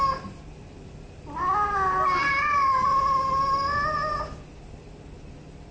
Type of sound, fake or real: real